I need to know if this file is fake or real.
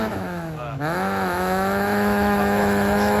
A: fake